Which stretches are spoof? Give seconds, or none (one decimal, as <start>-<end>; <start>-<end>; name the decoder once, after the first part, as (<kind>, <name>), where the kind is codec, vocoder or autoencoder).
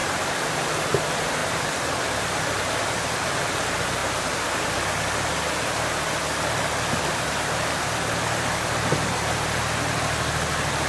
0.0-0.7 (vocoder, BigVGAN v2); 1.4-2.9